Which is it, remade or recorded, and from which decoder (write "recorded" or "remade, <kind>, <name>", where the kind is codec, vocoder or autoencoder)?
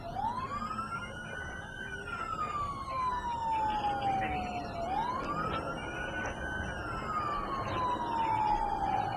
recorded